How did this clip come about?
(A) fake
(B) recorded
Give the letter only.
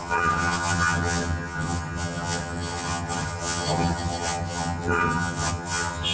A